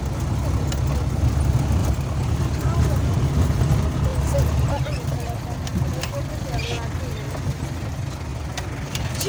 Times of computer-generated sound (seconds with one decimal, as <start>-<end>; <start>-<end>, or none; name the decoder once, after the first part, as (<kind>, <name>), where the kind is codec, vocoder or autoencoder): 1.8-3.6 (vocoder, BigVGAN v2); 4.1-5.3